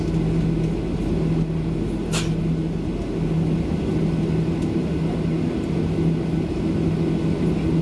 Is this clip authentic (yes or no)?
yes